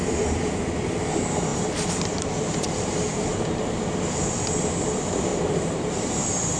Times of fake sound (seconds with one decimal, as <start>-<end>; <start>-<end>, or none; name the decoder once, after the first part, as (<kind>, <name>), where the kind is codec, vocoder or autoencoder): 0.0-0.6 (vocoder, BigVGAN v2); 1.5-3.8; 5.3-6.6